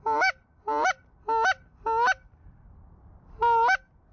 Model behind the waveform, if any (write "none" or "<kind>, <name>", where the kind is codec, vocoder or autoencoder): none